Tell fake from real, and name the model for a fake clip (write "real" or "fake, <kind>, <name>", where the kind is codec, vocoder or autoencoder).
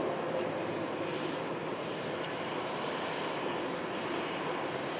real